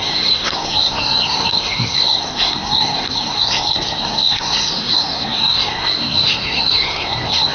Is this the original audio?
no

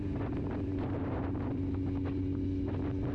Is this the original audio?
yes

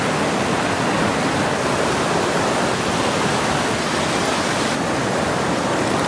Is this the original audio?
yes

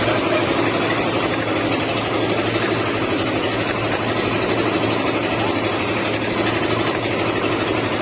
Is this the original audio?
yes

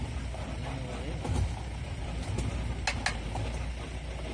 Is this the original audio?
yes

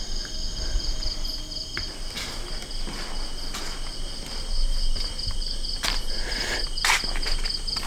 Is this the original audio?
yes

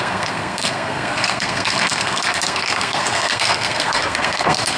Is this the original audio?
no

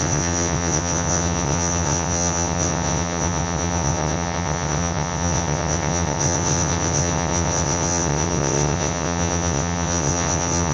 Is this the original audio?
no